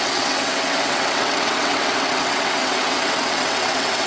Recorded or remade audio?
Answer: remade